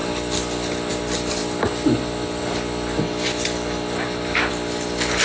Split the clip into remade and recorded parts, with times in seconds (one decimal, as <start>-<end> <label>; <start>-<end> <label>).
0.0-5.2 recorded